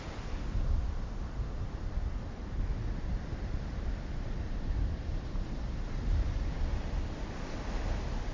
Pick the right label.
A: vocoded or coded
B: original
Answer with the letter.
B